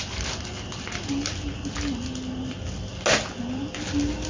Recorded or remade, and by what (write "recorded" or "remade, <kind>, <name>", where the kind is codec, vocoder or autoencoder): recorded